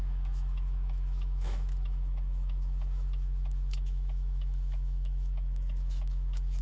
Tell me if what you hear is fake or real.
fake